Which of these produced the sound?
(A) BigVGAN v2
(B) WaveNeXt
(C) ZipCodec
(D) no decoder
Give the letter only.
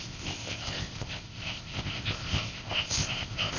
C